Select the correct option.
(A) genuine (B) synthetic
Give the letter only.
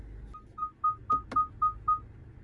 A